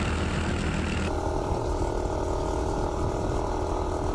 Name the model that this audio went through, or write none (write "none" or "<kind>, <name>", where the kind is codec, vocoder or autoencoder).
none